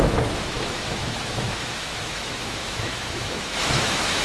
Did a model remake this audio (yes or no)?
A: yes